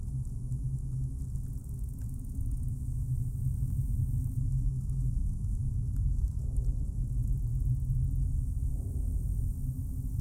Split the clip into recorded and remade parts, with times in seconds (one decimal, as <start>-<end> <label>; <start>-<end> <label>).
0.0-1.6 recorded; 1.6-5.6 remade; 5.6-10.2 recorded

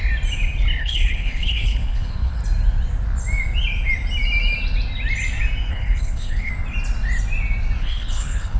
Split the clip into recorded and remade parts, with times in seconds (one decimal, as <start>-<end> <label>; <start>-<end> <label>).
0.0-0.8 recorded; 0.8-2.4 remade; 2.4-5.7 recorded; 5.7-6.5 remade; 6.5-7.8 recorded; 7.8-8.6 remade